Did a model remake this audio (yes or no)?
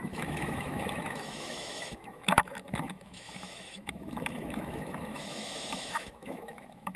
yes